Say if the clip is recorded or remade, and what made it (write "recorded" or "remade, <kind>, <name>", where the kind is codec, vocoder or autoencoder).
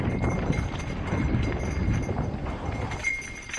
recorded